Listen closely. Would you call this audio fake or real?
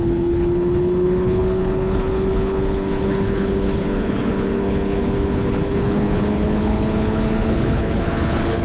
fake